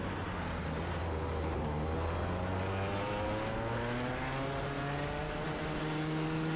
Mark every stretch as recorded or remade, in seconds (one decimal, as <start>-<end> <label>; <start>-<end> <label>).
0.0-6.6 recorded